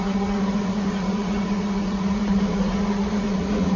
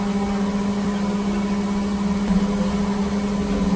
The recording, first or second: second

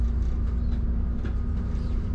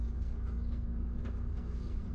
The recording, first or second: first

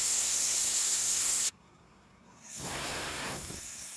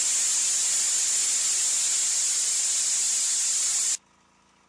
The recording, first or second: second